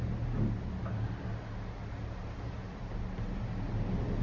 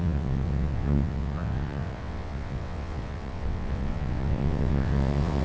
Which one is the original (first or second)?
first